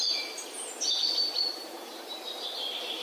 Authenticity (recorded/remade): remade